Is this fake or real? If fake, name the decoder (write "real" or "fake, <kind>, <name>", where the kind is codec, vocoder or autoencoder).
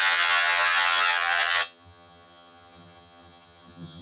fake, vocoder, HiFi-GAN